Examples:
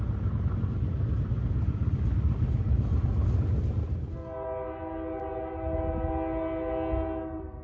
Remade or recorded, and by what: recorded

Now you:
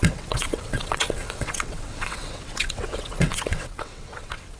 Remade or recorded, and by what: remade, vocoder, WaveNeXt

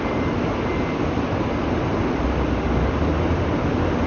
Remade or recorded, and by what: recorded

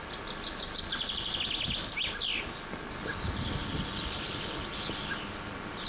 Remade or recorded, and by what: recorded